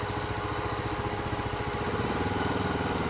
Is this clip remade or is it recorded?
recorded